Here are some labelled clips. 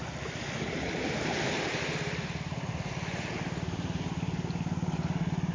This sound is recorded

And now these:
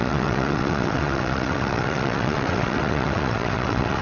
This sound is remade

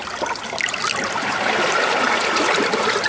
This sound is recorded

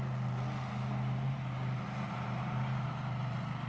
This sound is recorded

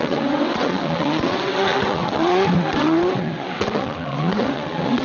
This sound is remade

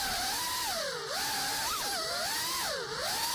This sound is recorded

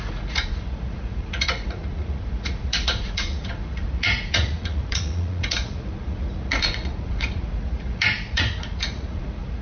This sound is remade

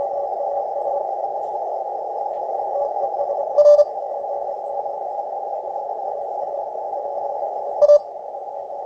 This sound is recorded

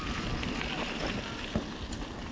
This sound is recorded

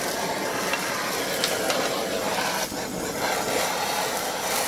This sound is recorded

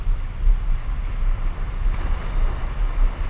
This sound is recorded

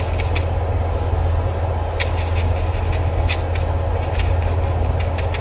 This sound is recorded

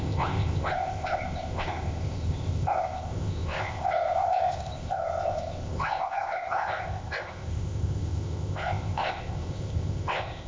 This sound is remade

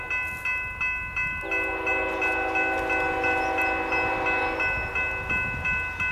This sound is recorded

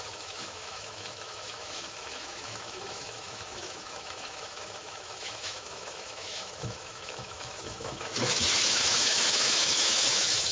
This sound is remade